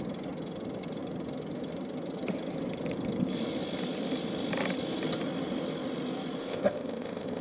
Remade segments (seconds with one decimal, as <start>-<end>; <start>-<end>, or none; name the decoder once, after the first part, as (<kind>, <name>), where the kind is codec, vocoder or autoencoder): 6.4-7.4 (codec, ZipCodec)